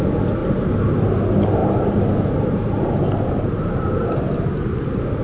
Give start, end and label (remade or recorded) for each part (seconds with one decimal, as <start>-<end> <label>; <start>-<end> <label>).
0.0-0.4 recorded; 0.4-0.9 remade; 0.9-1.6 recorded; 1.6-4.4 remade; 4.4-5.2 recorded